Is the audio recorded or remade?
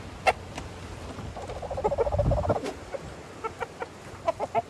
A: recorded